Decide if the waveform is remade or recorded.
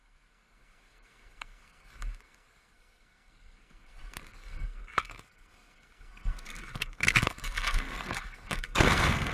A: remade